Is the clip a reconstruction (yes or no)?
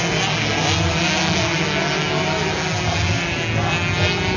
no